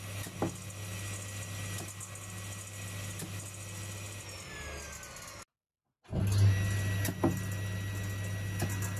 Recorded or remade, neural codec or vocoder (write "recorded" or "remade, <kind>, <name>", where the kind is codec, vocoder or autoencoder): recorded